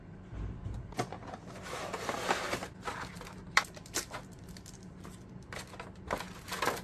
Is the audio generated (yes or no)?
no